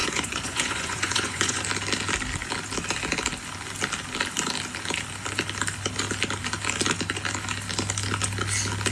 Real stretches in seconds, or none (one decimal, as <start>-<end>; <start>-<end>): 1.6-8.9

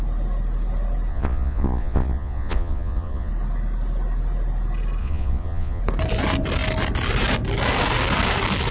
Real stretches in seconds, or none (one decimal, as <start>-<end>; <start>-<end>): 0.0-1.1; 3.3-5.0; 5.8-8.7

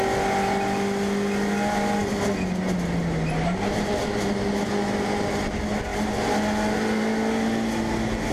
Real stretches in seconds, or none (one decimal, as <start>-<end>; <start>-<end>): 0.0-8.3